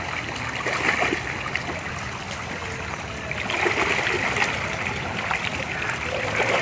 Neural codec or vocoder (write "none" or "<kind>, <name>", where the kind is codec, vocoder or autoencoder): none